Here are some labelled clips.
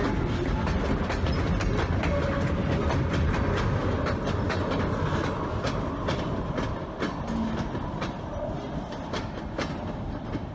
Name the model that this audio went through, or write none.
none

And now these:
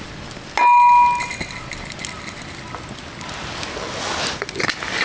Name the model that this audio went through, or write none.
none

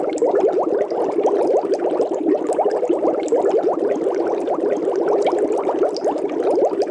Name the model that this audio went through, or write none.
vocoder, BigVGAN v2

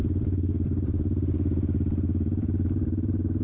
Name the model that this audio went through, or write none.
vocoder, BigVGAN v2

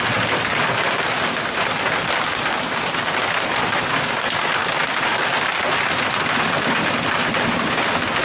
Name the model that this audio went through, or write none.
none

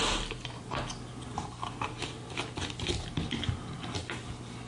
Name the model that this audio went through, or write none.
none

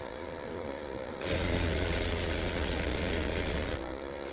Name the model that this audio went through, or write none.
vocoder, Vocos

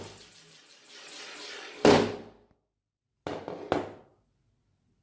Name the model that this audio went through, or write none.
none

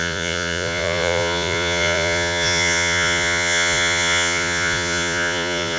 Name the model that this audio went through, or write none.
vocoder, Vocos